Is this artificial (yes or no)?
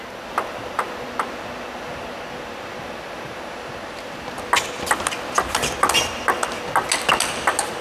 no